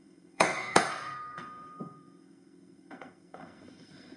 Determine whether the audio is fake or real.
fake